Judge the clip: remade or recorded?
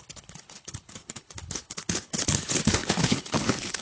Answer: remade